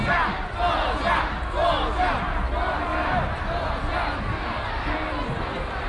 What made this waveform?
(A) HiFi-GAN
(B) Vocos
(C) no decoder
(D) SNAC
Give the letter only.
C